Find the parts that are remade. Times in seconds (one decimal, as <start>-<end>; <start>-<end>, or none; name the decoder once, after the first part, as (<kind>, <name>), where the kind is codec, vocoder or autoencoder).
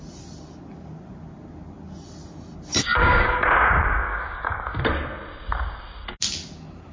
3.0-4.8 (codec, DAC)